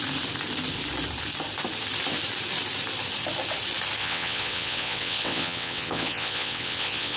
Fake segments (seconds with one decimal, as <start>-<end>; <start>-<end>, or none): 4.0-7.2